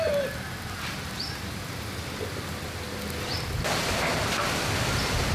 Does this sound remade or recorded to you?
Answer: recorded